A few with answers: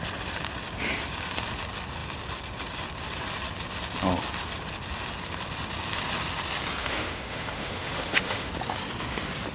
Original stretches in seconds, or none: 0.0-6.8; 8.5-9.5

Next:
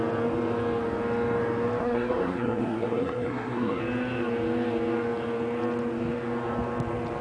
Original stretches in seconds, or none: 0.0-1.8; 3.8-7.2